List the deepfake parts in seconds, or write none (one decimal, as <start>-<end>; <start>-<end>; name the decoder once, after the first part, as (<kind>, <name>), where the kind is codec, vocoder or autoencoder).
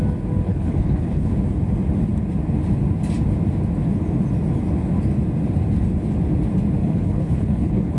0.5-1.3 (codec, HILCodec); 6.8-8.0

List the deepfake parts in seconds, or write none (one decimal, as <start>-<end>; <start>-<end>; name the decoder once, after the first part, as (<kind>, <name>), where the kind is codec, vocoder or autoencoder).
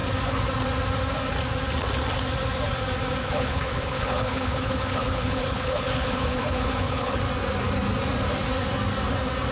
3.2-7.2 (codec, HILCodec)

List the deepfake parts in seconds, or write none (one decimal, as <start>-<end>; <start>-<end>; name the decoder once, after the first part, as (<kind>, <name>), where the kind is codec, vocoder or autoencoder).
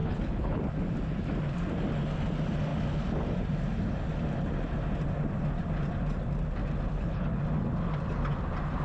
0.0-0.6 (codec, HILCodec); 6.9-7.4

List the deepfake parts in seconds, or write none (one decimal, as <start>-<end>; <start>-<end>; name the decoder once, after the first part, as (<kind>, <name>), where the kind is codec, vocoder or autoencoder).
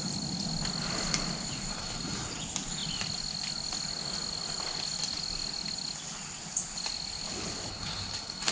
1.7-2.4 (codec, HILCodec); 7.7-8.5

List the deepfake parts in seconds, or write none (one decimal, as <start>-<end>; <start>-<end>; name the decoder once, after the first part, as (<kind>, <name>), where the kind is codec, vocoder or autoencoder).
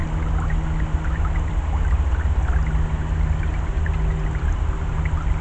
none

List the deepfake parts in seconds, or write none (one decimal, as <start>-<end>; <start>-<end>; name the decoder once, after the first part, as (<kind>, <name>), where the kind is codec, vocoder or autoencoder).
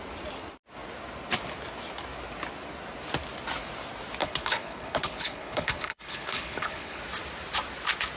4.2-7.0 (codec, HILCodec)